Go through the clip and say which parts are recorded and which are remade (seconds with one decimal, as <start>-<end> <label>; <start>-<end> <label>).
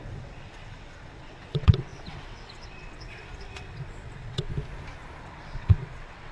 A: 0.0-4.5 remade; 4.5-5.2 recorded; 5.2-6.3 remade